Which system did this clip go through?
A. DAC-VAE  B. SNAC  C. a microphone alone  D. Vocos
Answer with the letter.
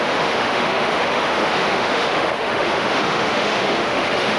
A